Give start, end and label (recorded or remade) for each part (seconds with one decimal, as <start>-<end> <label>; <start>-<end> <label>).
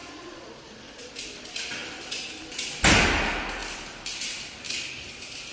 0.0-1.1 remade; 1.1-5.5 recorded